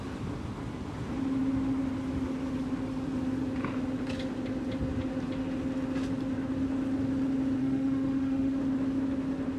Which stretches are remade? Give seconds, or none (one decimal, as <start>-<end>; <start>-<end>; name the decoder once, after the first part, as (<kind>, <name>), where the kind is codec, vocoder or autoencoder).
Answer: 7.6-8.6 (autoencoder, DAC-VAE)